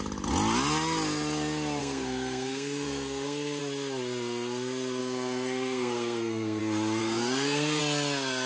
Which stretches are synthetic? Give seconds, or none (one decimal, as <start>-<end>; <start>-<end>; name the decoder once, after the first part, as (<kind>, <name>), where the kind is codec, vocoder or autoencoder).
1.8-3.6 (codec, SNAC); 5.0-6.6; 7.0-7.8